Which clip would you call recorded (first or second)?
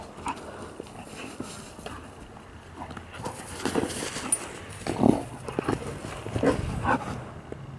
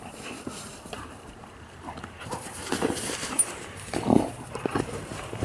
first